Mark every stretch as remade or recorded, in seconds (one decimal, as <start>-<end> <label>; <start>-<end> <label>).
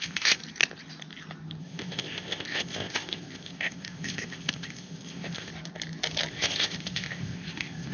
0.0-0.4 remade; 0.4-1.6 recorded; 1.6-5.5 remade; 5.5-6.3 recorded; 6.3-7.9 remade